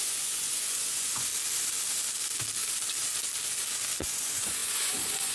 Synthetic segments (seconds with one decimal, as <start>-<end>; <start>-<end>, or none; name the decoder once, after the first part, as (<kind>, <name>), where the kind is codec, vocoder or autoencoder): 0.0-1.3 (vocoder, Vocos); 4.0-5.3

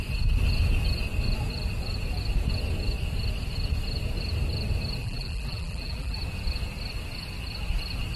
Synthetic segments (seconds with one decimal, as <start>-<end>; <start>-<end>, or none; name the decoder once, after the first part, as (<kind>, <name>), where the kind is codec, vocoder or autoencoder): 5.0-6.2 (vocoder, BigVGAN v2)

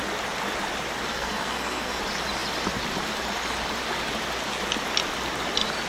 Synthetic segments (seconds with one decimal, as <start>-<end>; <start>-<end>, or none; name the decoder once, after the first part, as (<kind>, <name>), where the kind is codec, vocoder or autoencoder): 1.1-2.0 (codec, SNAC)

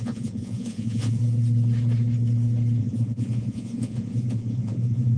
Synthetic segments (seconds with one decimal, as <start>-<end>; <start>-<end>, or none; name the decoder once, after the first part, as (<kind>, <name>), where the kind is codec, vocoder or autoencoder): 0.0-1.2 (vocoder, Vocos); 2.8-5.2

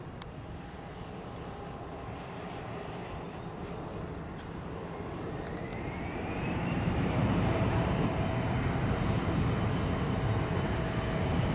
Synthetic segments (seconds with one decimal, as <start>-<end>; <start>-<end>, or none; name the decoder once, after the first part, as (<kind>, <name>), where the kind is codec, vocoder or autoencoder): 5.7-8.2 (vocoder, BigVGAN v2); 8.8-9.4